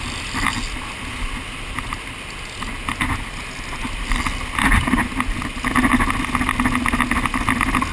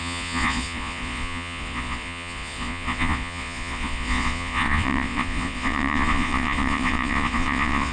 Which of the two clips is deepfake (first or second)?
second